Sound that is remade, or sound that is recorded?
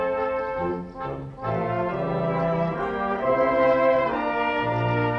recorded